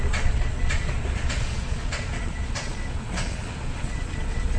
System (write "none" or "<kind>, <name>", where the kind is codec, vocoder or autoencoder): vocoder, Vocos